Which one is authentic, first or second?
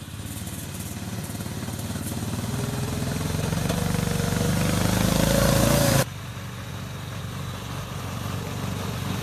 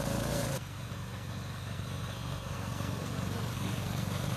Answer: first